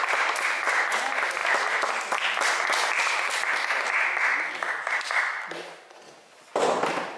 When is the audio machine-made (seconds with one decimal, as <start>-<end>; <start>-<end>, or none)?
none